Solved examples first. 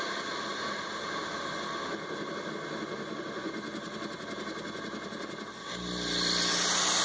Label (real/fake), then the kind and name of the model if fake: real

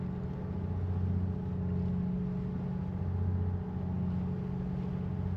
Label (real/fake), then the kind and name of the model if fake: real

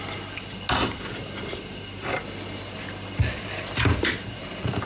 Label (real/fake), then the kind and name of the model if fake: real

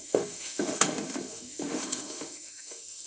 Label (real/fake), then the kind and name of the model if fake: fake, autoencoder, DAC-VAE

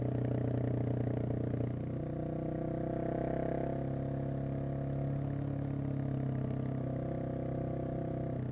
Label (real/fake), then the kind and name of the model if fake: real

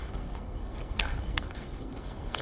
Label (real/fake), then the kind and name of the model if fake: fake, codec, SNAC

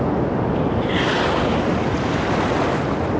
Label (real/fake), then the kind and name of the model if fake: real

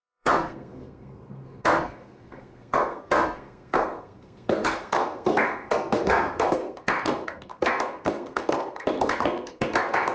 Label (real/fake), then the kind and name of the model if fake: fake, codec, SNAC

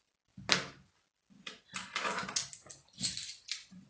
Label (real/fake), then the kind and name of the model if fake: real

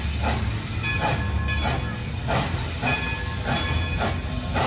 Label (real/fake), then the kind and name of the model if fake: real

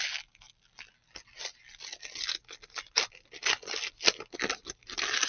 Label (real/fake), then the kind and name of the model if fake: real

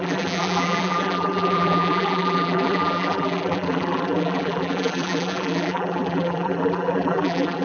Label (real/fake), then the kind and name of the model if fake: fake, vocoder, BigVGAN v2